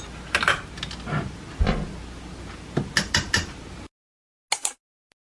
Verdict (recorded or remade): recorded